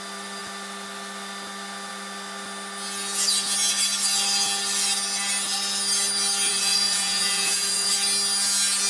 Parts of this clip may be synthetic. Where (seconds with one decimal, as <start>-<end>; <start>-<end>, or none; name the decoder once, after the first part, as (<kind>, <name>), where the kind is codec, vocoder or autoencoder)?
6.5-7.9 (vocoder, Vocos)